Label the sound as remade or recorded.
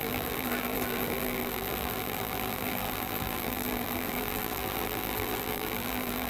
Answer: remade